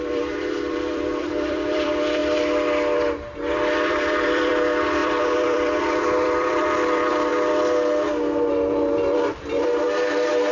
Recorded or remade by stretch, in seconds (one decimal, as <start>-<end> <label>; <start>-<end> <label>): 0.0-2.2 remade; 2.2-3.9 recorded; 3.9-7.3 remade; 7.3-8.9 recorded; 8.9-10.5 remade